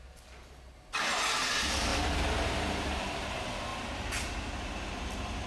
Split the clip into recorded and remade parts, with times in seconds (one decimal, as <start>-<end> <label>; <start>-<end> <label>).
0.0-5.5 recorded